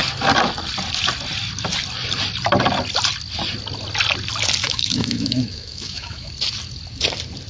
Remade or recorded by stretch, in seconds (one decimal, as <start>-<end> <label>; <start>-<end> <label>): 0.0-4.6 recorded; 4.6-6.3 remade; 6.3-7.5 recorded